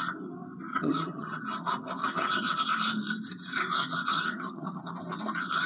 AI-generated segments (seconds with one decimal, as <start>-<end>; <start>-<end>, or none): 0.7-1.4; 2.0-2.6; 4.1-4.8